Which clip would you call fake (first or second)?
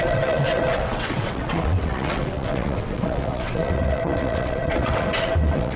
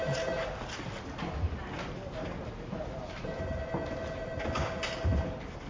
first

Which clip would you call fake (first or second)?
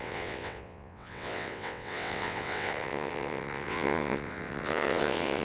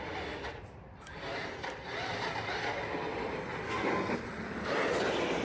first